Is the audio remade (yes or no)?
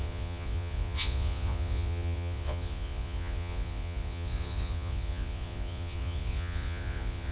yes